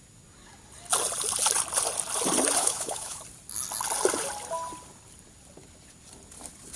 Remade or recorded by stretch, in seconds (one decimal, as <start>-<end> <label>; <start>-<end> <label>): 0.0-2.6 recorded; 2.6-3.2 remade; 3.2-6.8 recorded